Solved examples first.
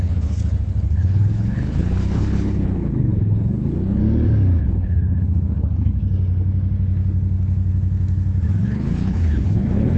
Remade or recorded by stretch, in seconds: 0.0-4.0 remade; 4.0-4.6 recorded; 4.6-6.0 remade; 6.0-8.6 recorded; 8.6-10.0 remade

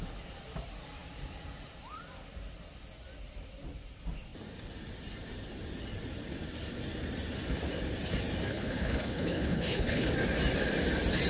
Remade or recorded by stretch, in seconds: 0.0-8.5 recorded; 8.5-10.1 remade; 10.1-11.3 recorded

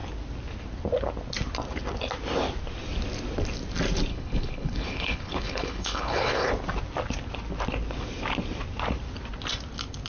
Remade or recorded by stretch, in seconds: 0.0-4.1 recorded; 4.1-6.5 remade; 6.5-10.1 recorded

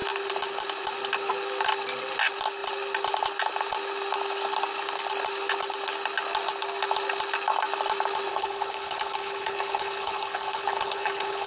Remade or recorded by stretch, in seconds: 0.0-8.3 recorded; 8.3-11.5 remade

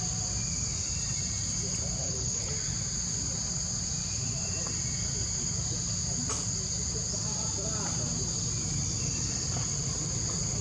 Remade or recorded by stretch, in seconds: 0.0-2.0 recorded; 2.0-2.5 remade; 2.5-10.6 recorded

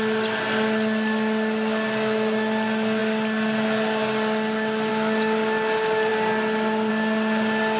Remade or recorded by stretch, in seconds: 0.0-7.8 recorded